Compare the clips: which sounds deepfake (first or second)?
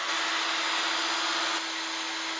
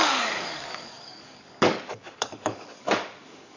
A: second